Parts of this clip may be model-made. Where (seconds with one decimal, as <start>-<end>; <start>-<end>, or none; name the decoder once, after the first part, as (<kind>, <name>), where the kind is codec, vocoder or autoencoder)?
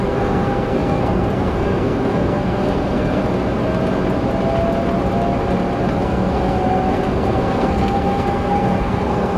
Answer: 0.0-3.2 (codec, SNAC); 5.9-9.4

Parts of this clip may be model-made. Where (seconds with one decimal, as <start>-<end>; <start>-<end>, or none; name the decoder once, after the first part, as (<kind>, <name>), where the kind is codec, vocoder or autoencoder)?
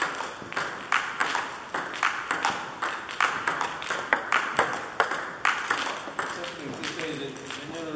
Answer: none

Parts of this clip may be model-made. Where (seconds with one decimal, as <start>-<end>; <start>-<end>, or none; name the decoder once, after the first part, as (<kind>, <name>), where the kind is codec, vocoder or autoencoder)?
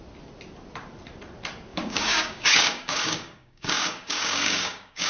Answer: 1.7-5.1 (codec, DAC)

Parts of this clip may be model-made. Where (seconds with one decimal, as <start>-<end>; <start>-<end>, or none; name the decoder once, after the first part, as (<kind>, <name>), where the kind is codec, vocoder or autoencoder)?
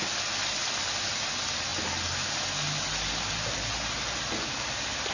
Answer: none